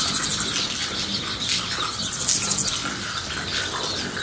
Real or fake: real